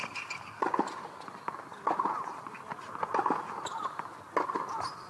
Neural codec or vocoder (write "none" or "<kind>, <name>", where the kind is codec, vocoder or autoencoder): none